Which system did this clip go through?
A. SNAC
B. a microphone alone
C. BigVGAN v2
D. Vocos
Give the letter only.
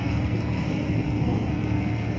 A